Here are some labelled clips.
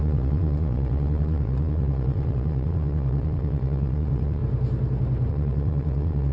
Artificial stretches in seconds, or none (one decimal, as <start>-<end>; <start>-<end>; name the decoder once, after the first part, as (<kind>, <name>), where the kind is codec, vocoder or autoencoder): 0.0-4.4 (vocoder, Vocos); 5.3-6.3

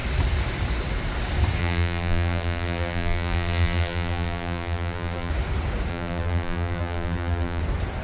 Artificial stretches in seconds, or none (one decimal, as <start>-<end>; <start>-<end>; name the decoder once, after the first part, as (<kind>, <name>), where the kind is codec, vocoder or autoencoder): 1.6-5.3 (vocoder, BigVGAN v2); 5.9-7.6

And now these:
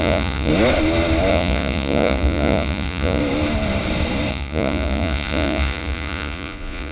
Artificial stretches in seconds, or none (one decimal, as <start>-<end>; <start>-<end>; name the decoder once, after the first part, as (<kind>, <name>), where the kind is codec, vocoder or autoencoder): 0.0-0.5 (vocoder, Vocos); 1.3-3.2; 4.3-6.9

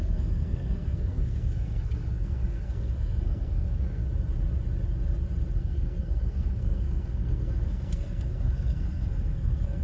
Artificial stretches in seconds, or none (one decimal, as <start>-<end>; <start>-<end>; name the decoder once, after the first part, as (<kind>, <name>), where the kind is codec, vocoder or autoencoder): 0.0-4.0 (codec, SNAC); 5.6-9.8

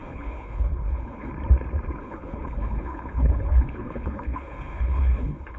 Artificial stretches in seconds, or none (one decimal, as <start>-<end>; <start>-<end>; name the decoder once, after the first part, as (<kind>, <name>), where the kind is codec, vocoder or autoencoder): 0.0-1.3 (codec, HILCodec); 2.0-5.6

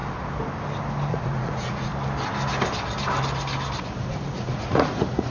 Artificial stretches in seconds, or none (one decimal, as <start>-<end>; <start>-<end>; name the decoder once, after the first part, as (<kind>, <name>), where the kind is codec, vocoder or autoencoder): 1.1-1.9 (vocoder, Vocos); 4.1-5.3

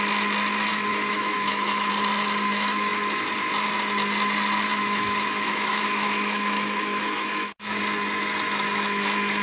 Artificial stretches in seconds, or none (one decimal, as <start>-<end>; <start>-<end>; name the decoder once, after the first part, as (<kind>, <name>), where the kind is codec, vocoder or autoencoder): 0.9-1.9 (autoencoder, DAC-VAE); 4.7-7.8